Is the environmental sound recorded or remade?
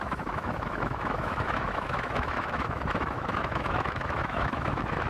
remade